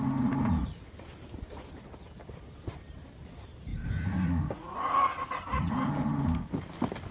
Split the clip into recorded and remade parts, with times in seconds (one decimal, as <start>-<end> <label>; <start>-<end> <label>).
0.0-3.7 recorded; 3.7-5.7 remade; 5.7-7.1 recorded